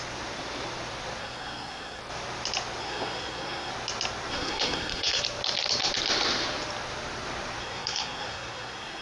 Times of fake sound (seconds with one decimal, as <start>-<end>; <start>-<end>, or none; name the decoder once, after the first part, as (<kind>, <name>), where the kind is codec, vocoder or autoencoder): 1.2-2.0 (codec, SNAC); 2.8-3.7; 4.3-5.2; 7.6-9.0